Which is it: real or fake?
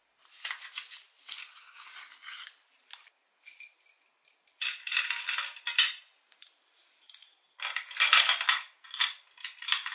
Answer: real